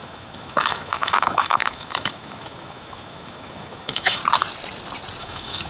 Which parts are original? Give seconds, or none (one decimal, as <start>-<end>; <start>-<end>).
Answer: 4.2-5.2